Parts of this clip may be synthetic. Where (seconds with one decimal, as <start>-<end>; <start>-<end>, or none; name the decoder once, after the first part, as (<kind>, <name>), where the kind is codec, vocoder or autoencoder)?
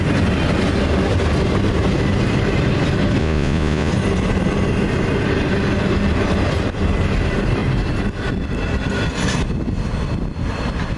3.2-3.9 (vocoder, Vocos)